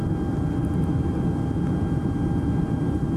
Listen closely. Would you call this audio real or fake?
real